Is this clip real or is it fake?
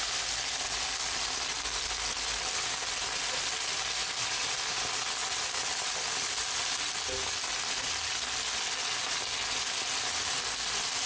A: real